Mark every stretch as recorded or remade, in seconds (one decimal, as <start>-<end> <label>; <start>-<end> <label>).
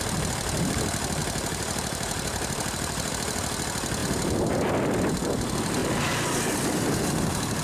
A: 0.0-1.2 recorded; 1.2-3.1 remade; 3.1-4.0 recorded; 4.0-4.6 remade; 4.6-7.6 recorded